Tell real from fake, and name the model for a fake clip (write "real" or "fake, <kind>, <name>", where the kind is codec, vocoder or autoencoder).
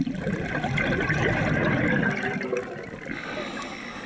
real